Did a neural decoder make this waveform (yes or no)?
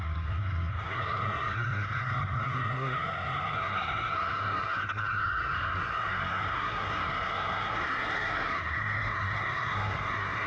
yes